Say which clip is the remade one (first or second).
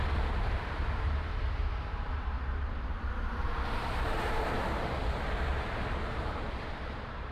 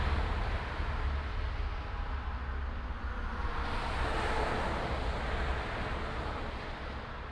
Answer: first